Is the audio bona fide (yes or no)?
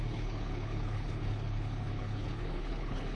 no